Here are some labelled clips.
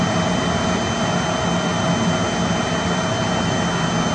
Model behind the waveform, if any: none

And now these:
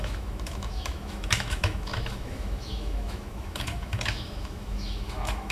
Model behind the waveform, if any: autoencoder, DAC-VAE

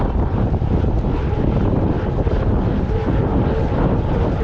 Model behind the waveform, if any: none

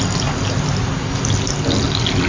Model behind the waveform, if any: none